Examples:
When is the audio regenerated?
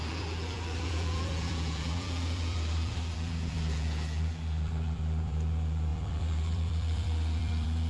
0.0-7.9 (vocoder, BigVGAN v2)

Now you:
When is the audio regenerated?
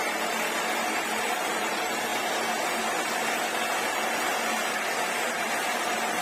0.0-2.1 (vocoder, BigVGAN v2); 5.5-6.2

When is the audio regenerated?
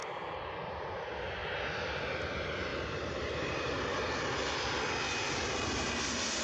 2.7-4.0 (vocoder, BigVGAN v2)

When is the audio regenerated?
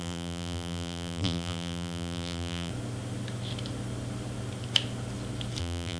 0.0-2.7 (vocoder, BigVGAN v2); 5.6-6.0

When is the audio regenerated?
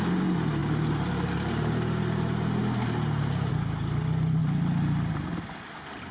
none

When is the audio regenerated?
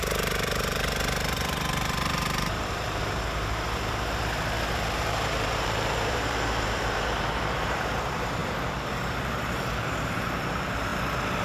0.0-10.9 (vocoder, BigVGAN v2)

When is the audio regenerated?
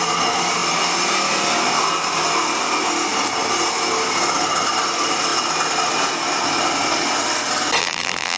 7.8-8.4 (vocoder, BigVGAN v2)